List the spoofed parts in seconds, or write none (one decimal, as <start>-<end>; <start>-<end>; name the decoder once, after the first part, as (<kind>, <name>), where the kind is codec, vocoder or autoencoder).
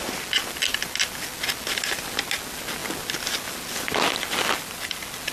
none